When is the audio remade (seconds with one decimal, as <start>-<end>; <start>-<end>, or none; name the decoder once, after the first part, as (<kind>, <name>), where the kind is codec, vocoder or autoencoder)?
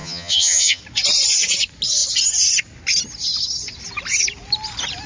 0.0-0.8 (vocoder, HiFi-GAN)